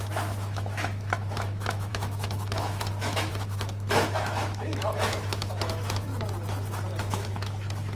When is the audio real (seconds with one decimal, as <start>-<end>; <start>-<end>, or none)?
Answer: 6.1-7.0